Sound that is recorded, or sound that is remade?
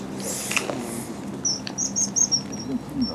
recorded